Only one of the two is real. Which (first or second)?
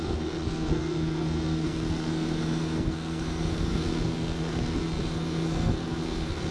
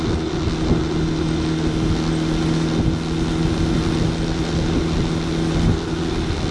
second